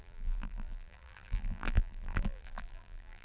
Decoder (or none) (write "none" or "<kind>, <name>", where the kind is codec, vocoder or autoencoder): vocoder, BigVGAN v2